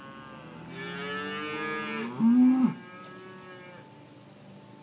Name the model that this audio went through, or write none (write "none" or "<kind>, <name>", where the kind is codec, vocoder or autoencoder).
none